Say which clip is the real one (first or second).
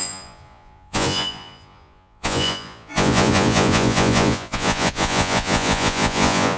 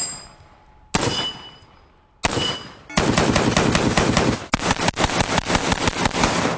second